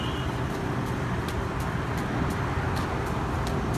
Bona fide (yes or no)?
yes